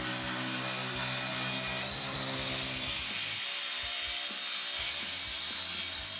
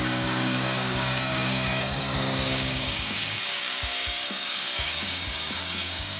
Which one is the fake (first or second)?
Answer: second